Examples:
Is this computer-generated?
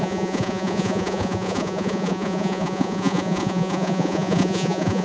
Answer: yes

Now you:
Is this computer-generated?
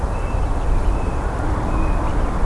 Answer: no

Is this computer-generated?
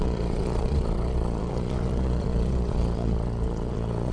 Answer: yes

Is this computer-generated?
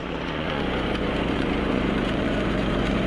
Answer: yes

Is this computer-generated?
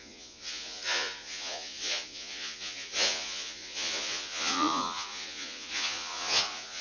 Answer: yes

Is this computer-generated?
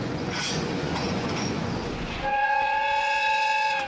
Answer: yes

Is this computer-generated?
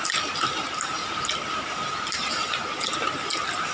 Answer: no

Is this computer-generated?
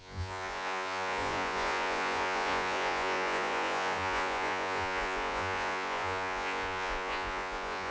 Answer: yes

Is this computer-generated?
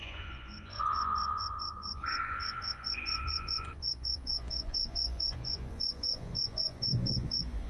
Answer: yes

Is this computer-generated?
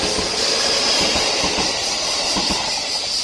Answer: no